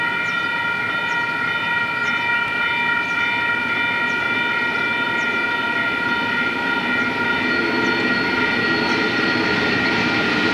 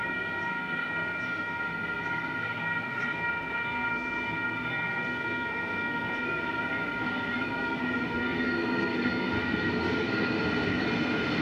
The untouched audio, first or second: first